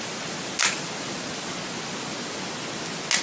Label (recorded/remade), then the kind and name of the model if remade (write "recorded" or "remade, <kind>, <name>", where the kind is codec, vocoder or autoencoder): recorded